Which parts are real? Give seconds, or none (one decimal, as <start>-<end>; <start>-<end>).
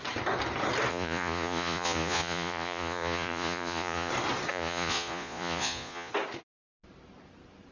0.0-0.9; 4.1-4.5; 6.1-7.7